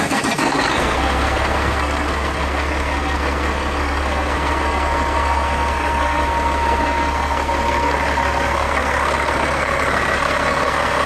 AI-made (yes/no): yes